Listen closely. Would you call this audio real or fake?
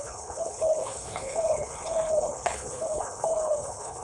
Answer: fake